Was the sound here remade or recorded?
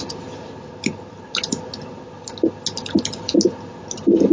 recorded